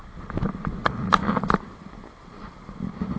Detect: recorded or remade recorded